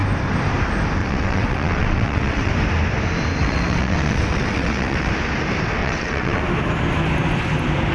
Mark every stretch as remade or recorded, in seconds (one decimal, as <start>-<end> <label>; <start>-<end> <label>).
0.0-1.0 recorded; 1.0-2.5 remade; 2.5-3.4 recorded; 3.4-5.1 remade; 5.1-5.8 recorded; 5.8-6.4 remade; 6.4-7.9 recorded